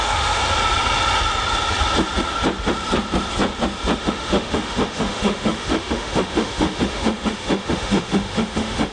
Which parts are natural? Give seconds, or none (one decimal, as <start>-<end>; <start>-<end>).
0.4-4.0